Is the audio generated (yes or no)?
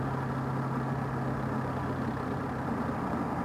no